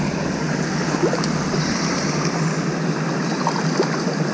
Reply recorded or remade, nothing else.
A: recorded